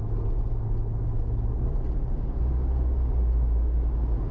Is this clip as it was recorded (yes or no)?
yes